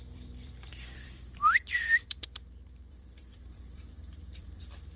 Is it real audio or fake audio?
fake